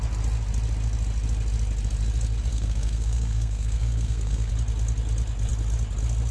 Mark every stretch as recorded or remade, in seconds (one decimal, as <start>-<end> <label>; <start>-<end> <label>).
0.0-2.5 recorded; 2.5-4.5 remade; 4.5-6.3 recorded